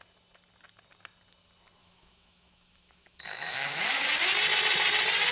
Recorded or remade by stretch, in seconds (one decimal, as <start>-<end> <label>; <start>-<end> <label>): 0.0-1.8 recorded; 1.8-4.0 remade; 4.0-5.3 recorded